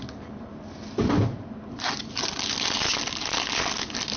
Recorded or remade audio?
recorded